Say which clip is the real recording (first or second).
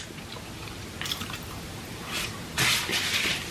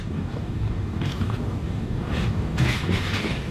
first